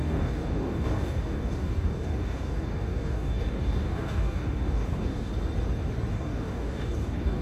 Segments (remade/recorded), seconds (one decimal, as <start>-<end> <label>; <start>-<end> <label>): 0.0-5.3 remade; 5.3-6.1 recorded; 6.1-7.4 remade